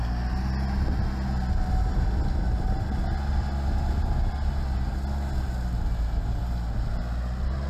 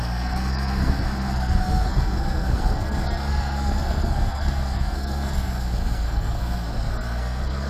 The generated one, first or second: second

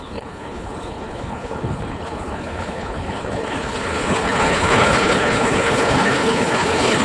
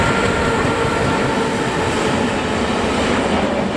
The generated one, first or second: first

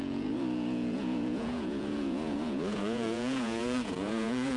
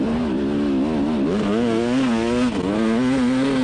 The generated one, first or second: first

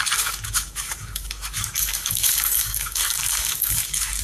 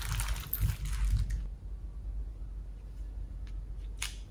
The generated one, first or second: first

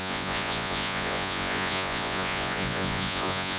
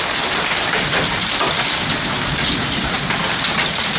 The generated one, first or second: first